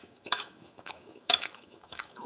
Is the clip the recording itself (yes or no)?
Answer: no